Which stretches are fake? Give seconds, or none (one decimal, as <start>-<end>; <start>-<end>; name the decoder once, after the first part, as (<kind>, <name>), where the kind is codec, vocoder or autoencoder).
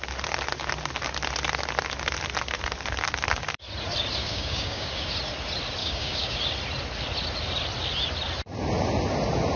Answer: 4.2-5.1 (codec, DAC); 5.8-6.4